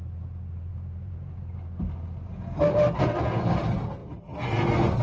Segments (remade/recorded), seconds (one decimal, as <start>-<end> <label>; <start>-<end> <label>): 0.0-0.7 recorded; 0.7-1.4 remade; 1.4-5.0 recorded